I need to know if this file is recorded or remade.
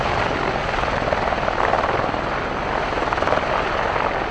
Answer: recorded